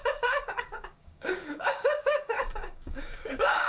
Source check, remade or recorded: remade